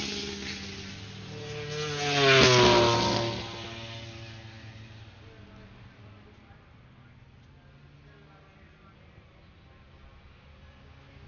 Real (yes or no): yes